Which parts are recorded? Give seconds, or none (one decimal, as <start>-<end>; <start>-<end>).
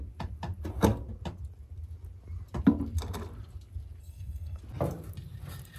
0.0-4.0; 4.6-5.8